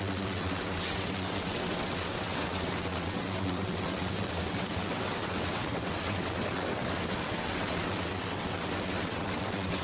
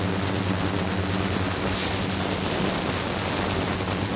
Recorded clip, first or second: second